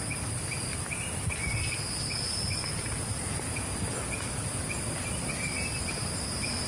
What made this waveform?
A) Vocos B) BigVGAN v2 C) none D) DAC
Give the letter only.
C